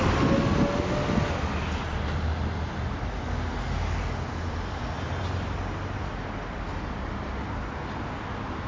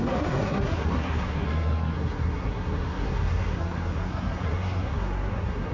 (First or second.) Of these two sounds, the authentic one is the first